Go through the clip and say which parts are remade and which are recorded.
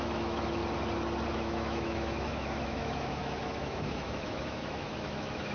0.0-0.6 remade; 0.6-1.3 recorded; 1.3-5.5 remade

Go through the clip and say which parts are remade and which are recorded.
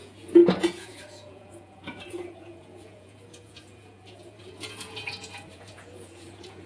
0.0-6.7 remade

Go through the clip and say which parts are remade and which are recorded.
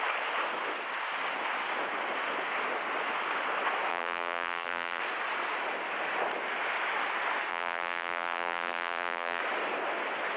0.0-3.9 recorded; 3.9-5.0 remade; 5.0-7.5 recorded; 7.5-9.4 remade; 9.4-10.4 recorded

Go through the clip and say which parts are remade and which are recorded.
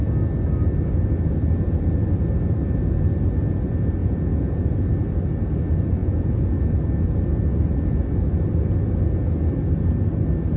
0.0-4.0 recorded; 4.0-4.7 remade; 4.7-6.0 recorded; 6.0-6.6 remade; 6.6-10.6 recorded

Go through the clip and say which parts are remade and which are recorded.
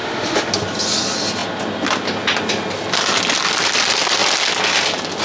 0.0-0.5 remade; 0.5-5.2 recorded